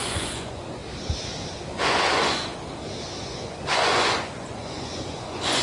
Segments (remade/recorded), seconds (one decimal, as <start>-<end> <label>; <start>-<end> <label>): 0.0-0.8 remade; 0.8-1.7 recorded; 1.7-2.5 remade; 2.5-3.2 recorded; 3.2-5.6 remade